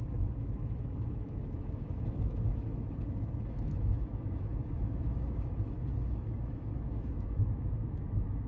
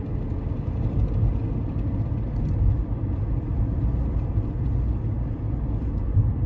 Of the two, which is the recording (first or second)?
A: second